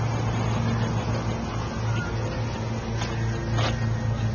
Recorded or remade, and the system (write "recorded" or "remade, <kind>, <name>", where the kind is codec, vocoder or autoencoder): recorded